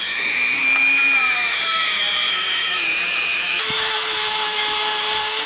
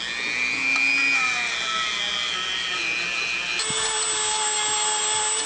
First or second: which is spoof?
first